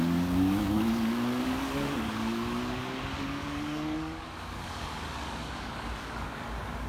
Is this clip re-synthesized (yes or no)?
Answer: yes